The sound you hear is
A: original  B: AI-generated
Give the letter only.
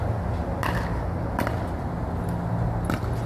A